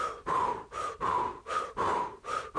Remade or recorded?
recorded